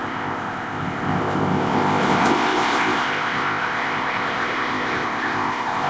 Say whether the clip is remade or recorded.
remade